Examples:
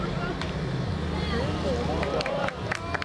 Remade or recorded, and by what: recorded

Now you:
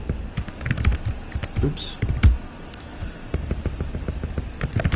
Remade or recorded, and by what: recorded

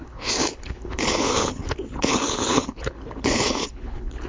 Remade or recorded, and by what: remade, codec, HILCodec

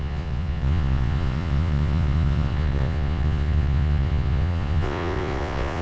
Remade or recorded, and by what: remade, vocoder, Vocos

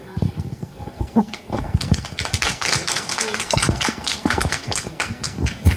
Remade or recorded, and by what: remade, codec, SNAC